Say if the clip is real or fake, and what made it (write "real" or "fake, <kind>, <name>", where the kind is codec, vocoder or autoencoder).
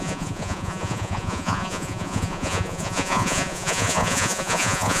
fake, vocoder, Vocos